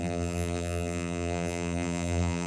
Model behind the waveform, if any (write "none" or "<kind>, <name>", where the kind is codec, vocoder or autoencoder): vocoder, BigVGAN v2